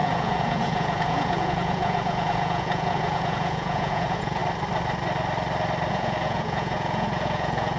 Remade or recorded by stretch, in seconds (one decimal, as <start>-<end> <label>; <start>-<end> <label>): 0.0-4.4 remade; 4.4-5.9 recorded; 5.9-7.8 remade